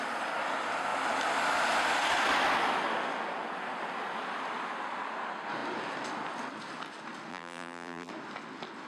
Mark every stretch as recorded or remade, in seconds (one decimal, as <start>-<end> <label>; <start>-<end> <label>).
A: 0.0-7.3 recorded; 7.3-8.1 remade; 8.1-8.9 recorded